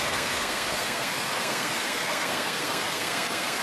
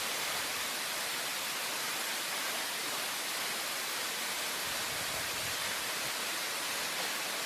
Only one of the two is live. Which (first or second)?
second